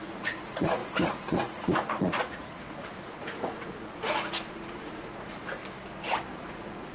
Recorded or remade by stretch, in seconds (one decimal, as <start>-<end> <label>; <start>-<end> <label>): 0.0-5.6 remade; 5.6-6.3 recorded; 6.3-6.9 remade